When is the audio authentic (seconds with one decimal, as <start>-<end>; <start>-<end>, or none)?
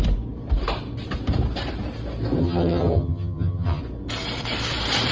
0.0-2.4; 3.8-5.1